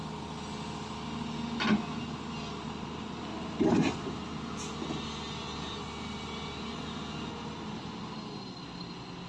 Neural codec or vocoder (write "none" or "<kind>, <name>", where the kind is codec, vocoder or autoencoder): none